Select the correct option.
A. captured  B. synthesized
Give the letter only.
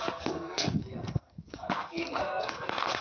B